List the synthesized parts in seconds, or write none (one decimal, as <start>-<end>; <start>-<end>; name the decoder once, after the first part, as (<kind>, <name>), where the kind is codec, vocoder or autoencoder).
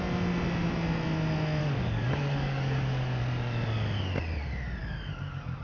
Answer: 1.6-3.2 (codec, DAC); 4.8-5.6